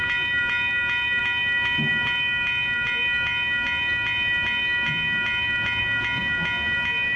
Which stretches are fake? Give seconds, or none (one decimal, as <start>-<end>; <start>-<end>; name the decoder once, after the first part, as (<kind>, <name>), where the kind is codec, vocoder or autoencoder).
none